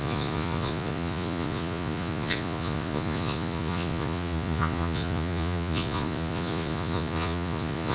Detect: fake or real fake